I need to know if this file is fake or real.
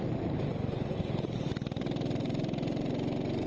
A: fake